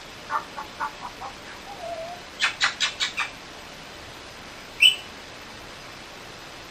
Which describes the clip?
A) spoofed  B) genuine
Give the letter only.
A